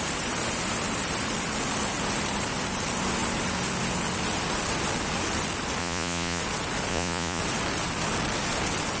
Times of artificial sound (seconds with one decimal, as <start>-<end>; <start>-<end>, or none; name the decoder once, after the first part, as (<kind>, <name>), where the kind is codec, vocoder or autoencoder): 5.8-6.4 (vocoder, Vocos); 6.9-7.4